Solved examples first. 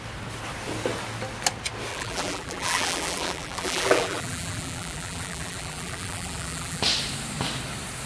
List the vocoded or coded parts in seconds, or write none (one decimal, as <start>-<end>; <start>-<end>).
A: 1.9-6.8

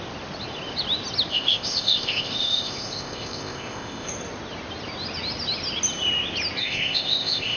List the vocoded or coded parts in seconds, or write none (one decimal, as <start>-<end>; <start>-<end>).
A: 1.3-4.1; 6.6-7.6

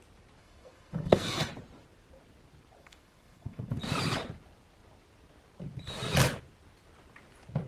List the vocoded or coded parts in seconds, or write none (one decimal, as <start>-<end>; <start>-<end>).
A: 0.4-1.5; 2.8-3.8